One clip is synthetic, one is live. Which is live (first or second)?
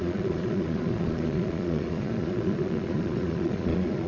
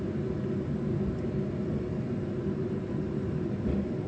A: second